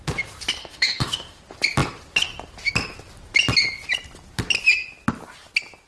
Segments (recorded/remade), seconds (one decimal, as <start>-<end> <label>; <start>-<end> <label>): 0.0-0.6 recorded; 0.6-1.4 remade; 1.4-5.9 recorded